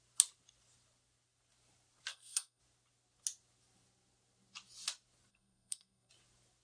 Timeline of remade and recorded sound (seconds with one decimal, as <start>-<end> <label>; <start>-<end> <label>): 0.0-2.1 recorded; 2.1-2.6 remade; 2.6-5.3 recorded; 5.3-6.1 remade; 6.1-6.6 recorded